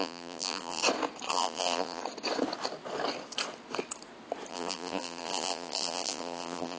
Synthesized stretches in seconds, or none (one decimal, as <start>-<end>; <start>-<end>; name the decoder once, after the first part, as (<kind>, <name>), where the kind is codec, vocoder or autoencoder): 0.0-0.8 (vocoder, BigVGAN v2); 1.3-2.0; 4.5-6.8